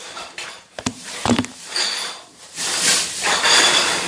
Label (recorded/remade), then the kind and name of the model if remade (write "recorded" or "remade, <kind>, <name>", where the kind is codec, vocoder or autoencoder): remade, vocoder, BigVGAN v2